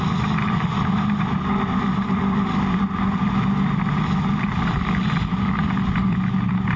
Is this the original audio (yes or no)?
yes